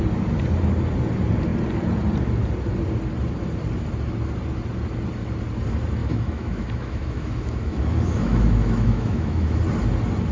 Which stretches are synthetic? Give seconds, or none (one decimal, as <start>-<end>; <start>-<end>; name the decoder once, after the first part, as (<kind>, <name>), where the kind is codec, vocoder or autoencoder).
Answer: 6.0-9.6 (autoencoder, DAC-VAE)